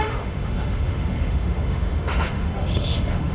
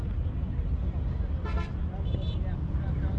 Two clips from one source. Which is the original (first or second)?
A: second